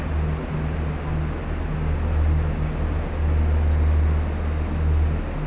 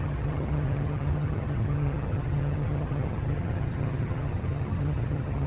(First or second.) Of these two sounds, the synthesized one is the second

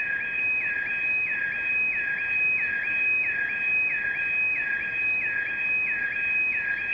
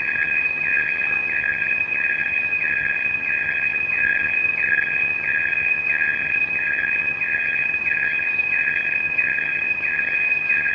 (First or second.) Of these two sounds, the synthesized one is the second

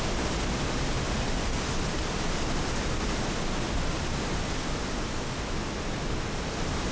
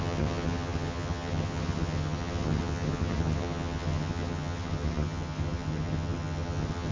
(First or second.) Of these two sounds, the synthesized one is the second